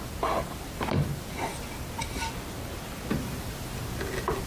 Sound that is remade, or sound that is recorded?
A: recorded